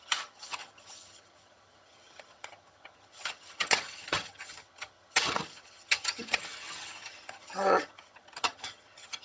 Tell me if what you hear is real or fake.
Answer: fake